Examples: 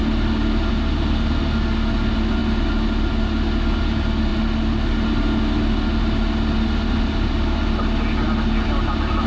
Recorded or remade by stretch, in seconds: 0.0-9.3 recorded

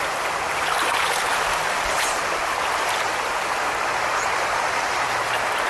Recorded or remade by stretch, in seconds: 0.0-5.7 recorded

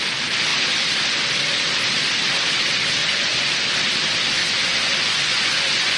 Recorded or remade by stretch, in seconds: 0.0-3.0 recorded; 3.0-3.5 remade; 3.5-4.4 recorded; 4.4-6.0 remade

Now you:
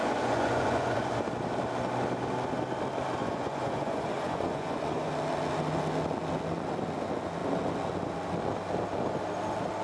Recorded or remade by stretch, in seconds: 0.0-1.1 remade; 1.1-3.2 recorded; 3.2-5.1 remade; 5.1-9.8 recorded

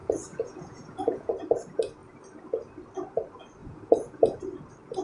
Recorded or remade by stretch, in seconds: 0.0-1.3 remade; 1.3-3.6 recorded; 3.6-4.4 remade; 4.4-5.0 recorded